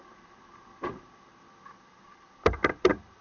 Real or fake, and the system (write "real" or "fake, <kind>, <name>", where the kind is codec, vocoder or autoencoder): fake, vocoder, BigVGAN v2